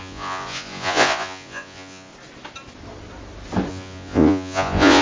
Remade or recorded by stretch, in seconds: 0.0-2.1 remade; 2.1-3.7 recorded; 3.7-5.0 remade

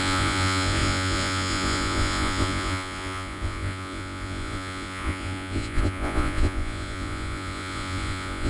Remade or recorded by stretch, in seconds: 0.0-8.5 remade